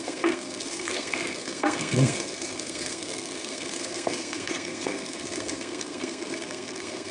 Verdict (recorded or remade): remade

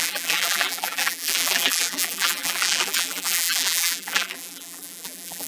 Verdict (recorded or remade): remade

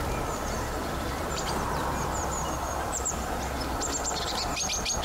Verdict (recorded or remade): remade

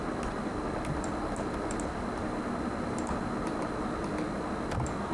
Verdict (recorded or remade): recorded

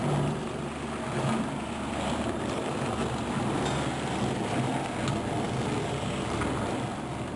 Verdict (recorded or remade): recorded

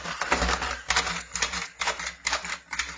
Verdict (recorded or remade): recorded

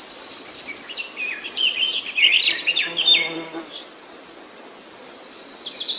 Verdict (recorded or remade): recorded